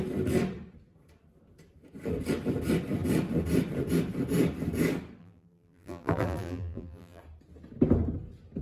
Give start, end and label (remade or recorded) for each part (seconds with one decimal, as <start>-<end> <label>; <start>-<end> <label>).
0.0-5.2 recorded; 5.2-7.2 remade; 7.2-8.6 recorded